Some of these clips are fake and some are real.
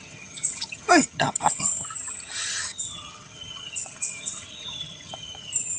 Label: fake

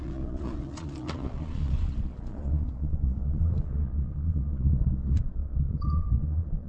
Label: fake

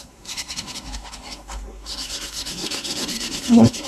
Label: fake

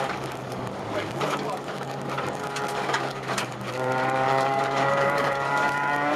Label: fake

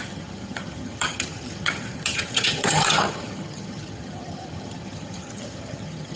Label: fake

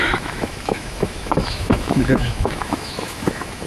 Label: fake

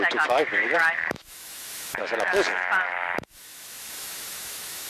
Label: fake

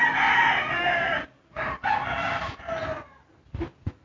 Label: real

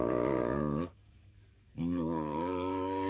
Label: fake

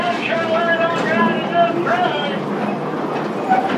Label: fake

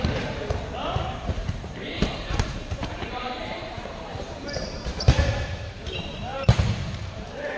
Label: fake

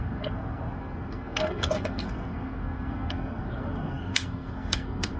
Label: fake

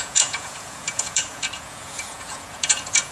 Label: fake